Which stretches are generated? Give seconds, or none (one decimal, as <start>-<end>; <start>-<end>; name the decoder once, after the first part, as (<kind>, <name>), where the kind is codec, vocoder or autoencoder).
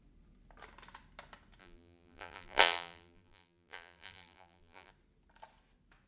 1.6-4.9 (vocoder, BigVGAN v2)